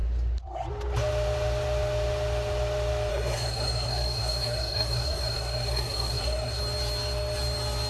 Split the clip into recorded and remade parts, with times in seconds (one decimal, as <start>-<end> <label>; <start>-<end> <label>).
0.0-3.1 recorded; 3.1-6.6 remade; 6.6-7.9 recorded